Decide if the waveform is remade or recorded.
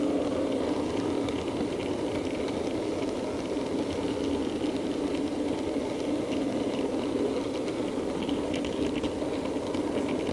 recorded